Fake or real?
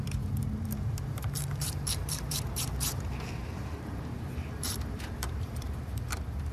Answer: fake